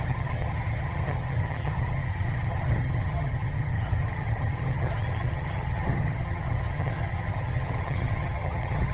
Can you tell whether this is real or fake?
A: fake